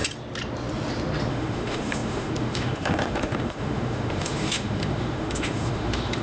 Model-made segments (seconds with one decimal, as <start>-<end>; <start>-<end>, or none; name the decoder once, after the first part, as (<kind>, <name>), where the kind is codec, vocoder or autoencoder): 1.3-6.2 (autoencoder, DAC-VAE)